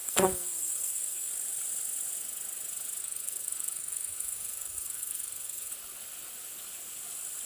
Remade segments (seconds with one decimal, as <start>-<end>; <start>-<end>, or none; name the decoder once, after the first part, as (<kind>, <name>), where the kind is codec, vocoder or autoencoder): 0.0-1.3 (codec, SNAC); 3.0-5.7